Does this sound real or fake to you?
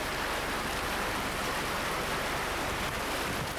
real